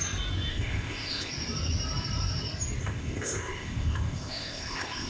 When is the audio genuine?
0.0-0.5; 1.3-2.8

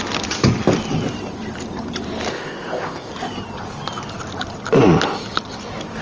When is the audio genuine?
0.0-2.3; 3.1-6.0

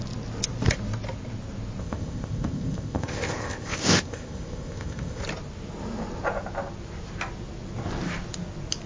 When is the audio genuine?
0.0-1.8; 5.2-8.9

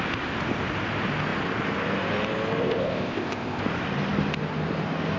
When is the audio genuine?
0.0-2.6; 3.6-5.2